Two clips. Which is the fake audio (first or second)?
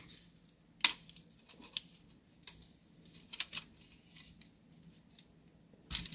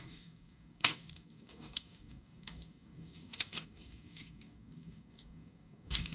second